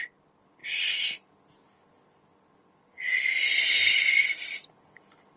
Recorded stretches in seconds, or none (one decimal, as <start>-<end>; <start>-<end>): 0.0-5.4